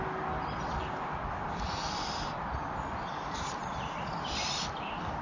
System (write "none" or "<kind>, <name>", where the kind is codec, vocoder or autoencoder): none